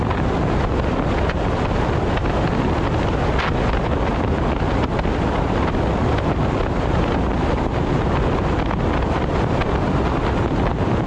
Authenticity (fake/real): real